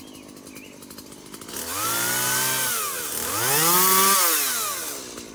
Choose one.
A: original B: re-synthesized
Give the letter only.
A